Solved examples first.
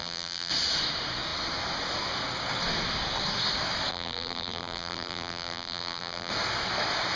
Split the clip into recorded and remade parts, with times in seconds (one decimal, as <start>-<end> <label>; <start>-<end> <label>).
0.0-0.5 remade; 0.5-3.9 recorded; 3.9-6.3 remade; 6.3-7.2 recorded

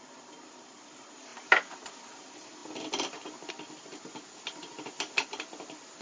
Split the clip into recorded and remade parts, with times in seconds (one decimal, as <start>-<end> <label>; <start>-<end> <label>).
0.0-1.3 recorded; 1.3-1.9 remade; 1.9-6.0 recorded

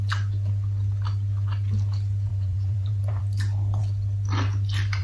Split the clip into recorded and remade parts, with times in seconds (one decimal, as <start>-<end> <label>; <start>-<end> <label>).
0.0-2.3 recorded; 2.3-3.2 remade; 3.2-5.0 recorded

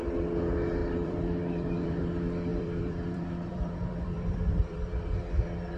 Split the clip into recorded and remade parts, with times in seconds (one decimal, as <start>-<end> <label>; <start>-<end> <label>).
0.0-0.8 recorded; 0.8-2.0 remade; 2.0-2.5 recorded; 2.5-5.2 remade; 5.2-5.8 recorded

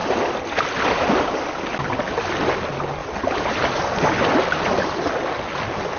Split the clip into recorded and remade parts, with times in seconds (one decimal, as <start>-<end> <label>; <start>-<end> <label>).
0.0-2.0 remade; 2.0-6.0 recorded

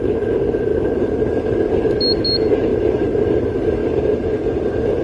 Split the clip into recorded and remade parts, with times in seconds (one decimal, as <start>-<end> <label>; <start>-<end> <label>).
0.0-5.0 recorded

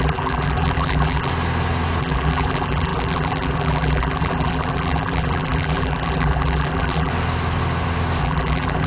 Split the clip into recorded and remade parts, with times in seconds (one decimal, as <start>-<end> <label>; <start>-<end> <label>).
0.0-1.3 remade; 1.3-2.0 recorded; 2.0-7.1 remade; 7.1-8.2 recorded; 8.2-8.9 remade